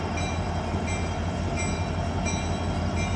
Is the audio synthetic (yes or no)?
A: no